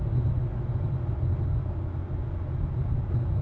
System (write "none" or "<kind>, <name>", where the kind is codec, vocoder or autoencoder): none